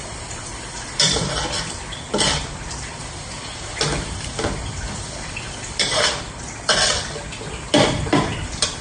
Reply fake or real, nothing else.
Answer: fake